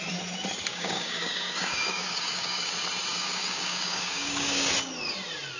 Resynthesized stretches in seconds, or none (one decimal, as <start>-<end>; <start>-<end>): 0.7-2.7; 3.1-4.7